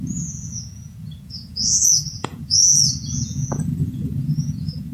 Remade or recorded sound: remade